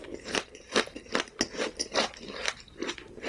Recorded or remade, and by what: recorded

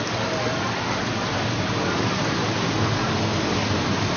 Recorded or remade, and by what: recorded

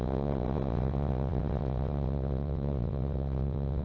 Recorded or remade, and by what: remade, vocoder, WaveNeXt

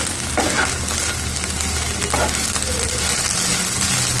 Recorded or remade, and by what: recorded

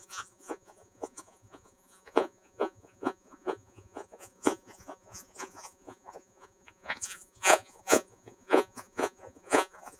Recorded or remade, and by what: remade, vocoder, Vocos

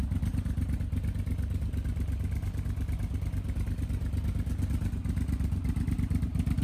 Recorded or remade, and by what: recorded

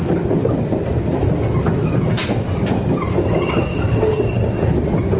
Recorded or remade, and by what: recorded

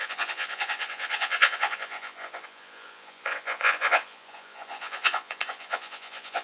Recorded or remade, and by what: remade, vocoder, Vocos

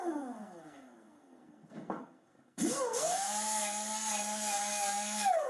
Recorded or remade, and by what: remade, codec, SNAC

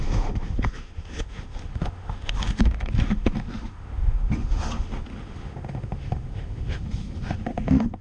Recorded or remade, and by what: remade, autoencoder, DAC-VAE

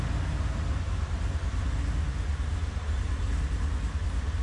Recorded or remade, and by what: recorded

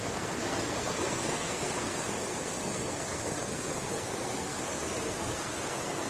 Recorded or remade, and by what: remade, codec, SNAC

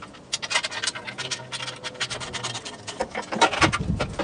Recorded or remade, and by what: recorded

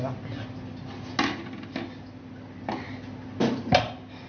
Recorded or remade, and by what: recorded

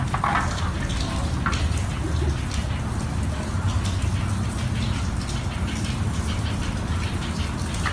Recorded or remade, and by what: recorded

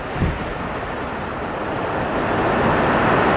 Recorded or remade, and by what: recorded